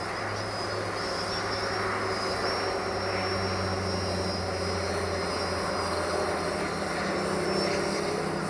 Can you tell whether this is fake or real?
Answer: real